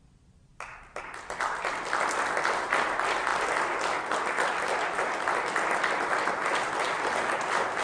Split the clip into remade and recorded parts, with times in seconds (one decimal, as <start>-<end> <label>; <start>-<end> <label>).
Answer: 0.0-7.8 recorded